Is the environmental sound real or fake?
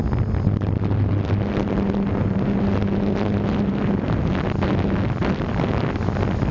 real